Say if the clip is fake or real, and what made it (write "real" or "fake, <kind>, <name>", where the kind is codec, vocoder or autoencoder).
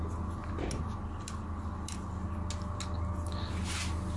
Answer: real